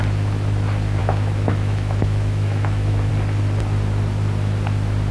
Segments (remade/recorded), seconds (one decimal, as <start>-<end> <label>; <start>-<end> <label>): 0.0-1.0 recorded; 1.0-3.1 remade; 3.1-5.1 recorded